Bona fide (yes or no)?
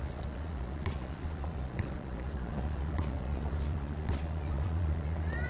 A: no